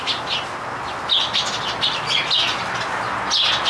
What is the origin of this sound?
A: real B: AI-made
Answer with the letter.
A